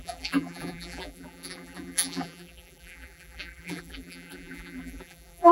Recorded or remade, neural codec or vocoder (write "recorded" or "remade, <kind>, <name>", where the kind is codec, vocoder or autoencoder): remade, vocoder, BigVGAN v2